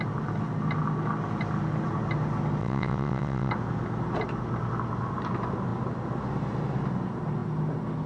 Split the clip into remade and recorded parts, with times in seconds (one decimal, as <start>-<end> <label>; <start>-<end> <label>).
0.0-2.6 recorded; 2.6-3.5 remade; 3.5-8.1 recorded